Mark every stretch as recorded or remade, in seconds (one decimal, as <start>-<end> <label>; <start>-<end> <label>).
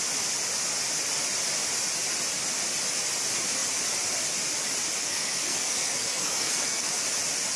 0.0-5.0 recorded; 5.0-6.9 remade; 6.9-7.6 recorded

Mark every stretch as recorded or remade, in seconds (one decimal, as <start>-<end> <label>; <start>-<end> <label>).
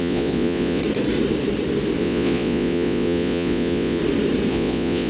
0.0-0.8 remade; 0.8-2.0 recorded; 2.0-4.0 remade; 4.0-4.5 recorded; 4.5-5.1 remade